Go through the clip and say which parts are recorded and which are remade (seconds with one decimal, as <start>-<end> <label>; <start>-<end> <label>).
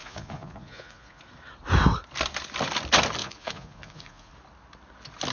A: 0.0-1.2 remade; 1.2-3.2 recorded; 3.2-4.3 remade; 4.3-5.3 recorded